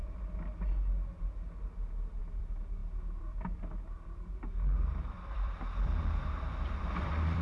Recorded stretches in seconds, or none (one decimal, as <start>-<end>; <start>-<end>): 0.0-2.2